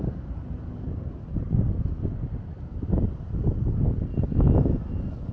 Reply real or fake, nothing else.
real